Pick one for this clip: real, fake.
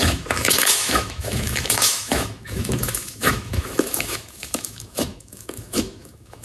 fake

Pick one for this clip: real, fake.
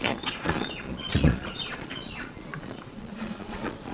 fake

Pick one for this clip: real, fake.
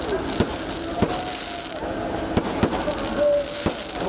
real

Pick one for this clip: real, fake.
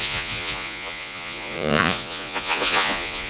fake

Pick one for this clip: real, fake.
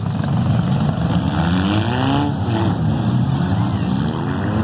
real